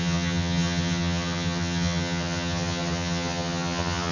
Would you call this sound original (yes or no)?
no